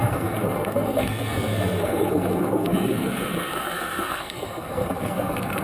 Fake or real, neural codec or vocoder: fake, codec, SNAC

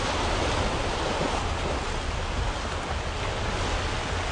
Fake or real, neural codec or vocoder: real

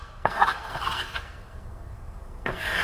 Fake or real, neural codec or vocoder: fake, codec, SNAC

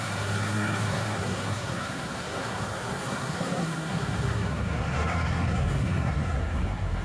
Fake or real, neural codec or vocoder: fake, codec, SNAC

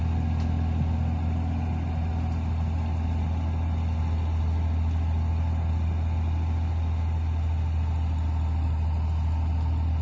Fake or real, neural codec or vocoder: real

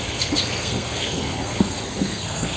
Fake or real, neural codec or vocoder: fake, codec, SNAC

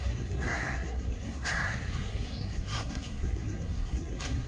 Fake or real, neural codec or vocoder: fake, codec, SNAC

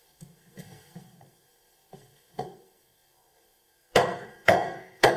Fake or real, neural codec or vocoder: fake, codec, SNAC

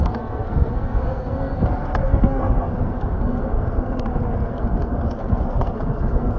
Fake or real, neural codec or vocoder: fake, codec, SNAC